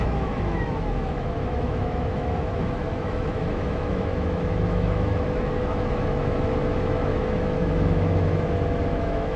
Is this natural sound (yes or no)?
no